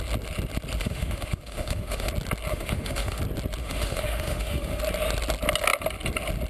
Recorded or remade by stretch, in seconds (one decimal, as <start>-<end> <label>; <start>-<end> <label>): 0.0-0.8 recorded; 0.8-2.1 remade; 2.1-2.5 recorded; 2.5-3.2 remade; 3.2-3.6 recorded; 3.6-4.8 remade; 4.8-6.5 recorded